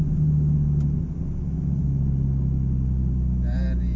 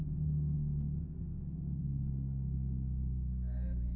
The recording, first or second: first